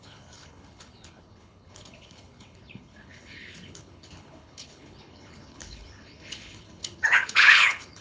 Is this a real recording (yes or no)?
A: no